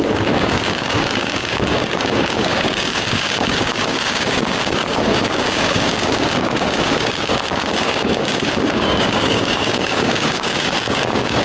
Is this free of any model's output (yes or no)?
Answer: no